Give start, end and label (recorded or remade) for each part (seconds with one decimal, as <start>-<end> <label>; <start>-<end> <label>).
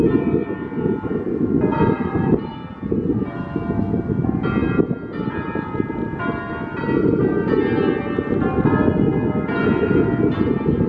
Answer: 0.0-1.7 recorded; 1.7-2.7 remade; 2.7-10.9 recorded